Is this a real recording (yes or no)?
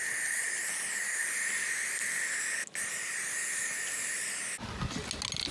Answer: yes